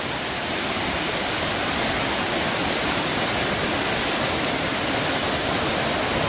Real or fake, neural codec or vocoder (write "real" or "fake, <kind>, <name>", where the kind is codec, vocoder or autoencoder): real